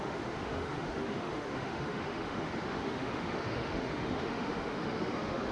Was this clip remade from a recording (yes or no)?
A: yes